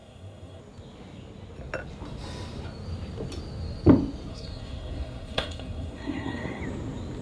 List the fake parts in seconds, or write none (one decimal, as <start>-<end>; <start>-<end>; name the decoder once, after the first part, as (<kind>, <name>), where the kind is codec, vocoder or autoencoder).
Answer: 0.0-0.6 (codec, SNAC); 4.3-6.6